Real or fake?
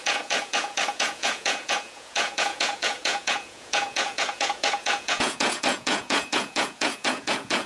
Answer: fake